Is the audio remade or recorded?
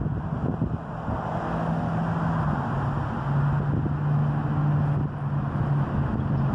recorded